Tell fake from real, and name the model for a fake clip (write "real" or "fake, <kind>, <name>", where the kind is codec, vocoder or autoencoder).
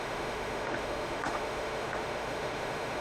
fake, autoencoder, DAC-VAE